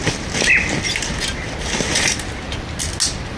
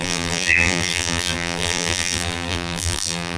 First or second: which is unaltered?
first